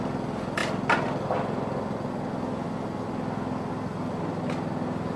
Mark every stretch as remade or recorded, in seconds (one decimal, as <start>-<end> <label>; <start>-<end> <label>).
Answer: 0.0-5.2 recorded